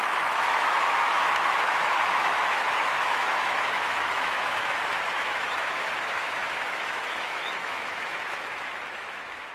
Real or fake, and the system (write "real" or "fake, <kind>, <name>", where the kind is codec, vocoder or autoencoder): fake, autoencoder, DAC-VAE